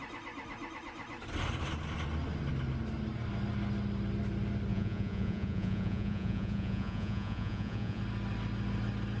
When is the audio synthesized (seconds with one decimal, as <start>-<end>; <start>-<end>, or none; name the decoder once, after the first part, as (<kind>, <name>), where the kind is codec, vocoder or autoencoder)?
4.7-8.0 (vocoder, Vocos)